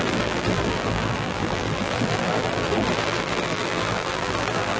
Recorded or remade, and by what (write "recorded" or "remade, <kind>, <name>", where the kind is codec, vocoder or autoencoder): remade, vocoder, BigVGAN v2